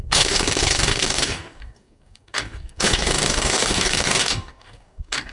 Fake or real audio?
fake